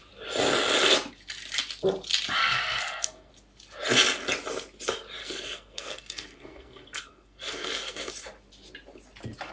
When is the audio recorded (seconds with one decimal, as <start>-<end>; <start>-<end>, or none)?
0.0-2.4; 3.3-5.2; 8.1-9.5

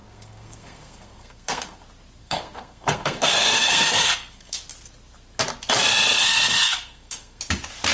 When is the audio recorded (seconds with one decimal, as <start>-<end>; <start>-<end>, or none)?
1.8-2.2; 4.6-6.2; 7.4-7.9

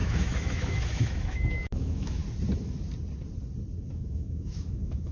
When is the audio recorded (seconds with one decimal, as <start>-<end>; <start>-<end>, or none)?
2.2-3.9

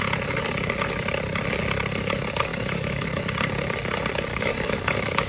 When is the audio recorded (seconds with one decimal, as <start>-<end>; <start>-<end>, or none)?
0.0-2.5; 3.2-4.3

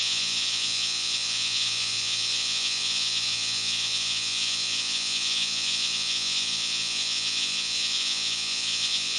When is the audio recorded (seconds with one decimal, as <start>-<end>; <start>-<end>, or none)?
none

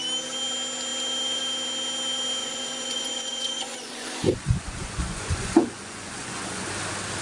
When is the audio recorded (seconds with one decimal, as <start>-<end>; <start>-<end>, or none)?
0.0-2.4; 6.7-7.2

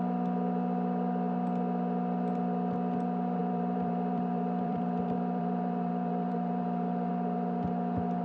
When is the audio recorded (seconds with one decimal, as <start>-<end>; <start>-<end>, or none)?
0.0-3.4; 7.1-8.2